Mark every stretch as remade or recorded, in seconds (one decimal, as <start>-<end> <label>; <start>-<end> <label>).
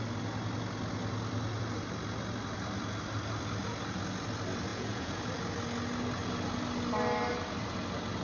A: 0.0-4.7 recorded; 4.7-5.2 remade; 5.2-8.2 recorded